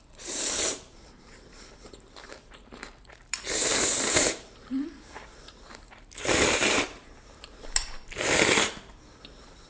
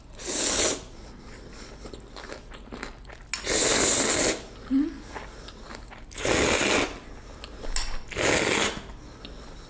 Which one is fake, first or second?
first